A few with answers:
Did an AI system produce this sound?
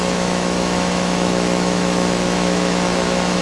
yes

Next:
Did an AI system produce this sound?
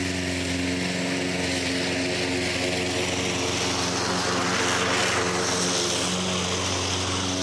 no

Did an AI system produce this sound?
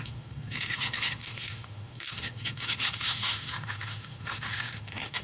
yes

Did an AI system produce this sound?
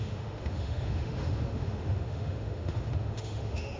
yes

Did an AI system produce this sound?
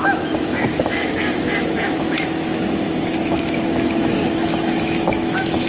yes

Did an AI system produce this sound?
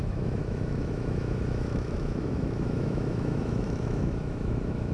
yes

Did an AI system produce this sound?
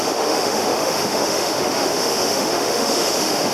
yes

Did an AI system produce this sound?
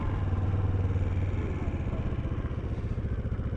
no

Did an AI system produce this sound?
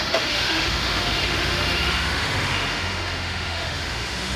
yes